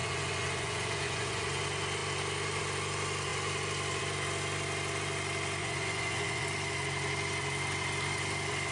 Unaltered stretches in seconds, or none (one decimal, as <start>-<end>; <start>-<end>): 1.6-5.6; 6.4-8.7